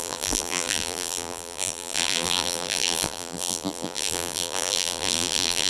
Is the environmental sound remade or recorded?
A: remade